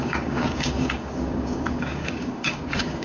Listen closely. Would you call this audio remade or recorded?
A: remade